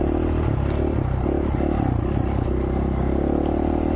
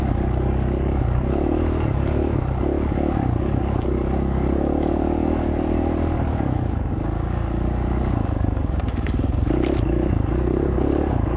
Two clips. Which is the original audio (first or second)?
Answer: first